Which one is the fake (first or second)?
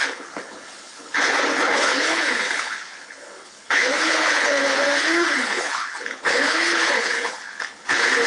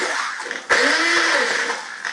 first